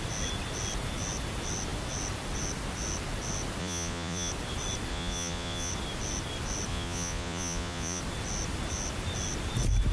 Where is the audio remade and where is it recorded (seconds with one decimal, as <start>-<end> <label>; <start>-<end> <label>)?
0.0-3.6 recorded; 3.6-4.3 remade; 4.3-4.9 recorded; 4.9-5.7 remade; 5.7-6.7 recorded; 6.7-8.0 remade; 8.0-9.9 recorded